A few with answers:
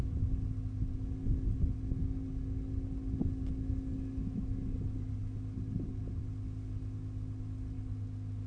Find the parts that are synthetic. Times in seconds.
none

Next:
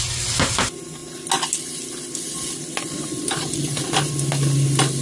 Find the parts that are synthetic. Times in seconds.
none

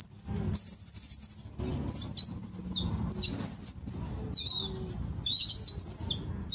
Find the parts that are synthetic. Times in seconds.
none